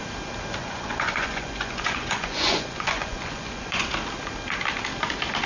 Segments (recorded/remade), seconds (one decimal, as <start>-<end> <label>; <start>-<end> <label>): 0.0-0.6 recorded; 0.6-3.9 remade; 3.9-5.5 recorded